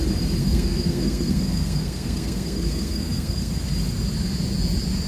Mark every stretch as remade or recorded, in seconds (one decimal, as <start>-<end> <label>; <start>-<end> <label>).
0.0-0.4 recorded; 0.4-3.5 remade; 3.5-5.1 recorded